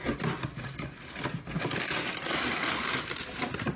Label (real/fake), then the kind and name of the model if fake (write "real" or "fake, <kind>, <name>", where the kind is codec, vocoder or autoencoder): real